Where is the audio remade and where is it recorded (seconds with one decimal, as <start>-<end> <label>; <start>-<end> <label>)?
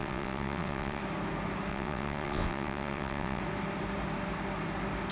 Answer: 0.0-1.0 remade; 1.0-1.7 recorded; 1.7-3.4 remade; 3.4-5.1 recorded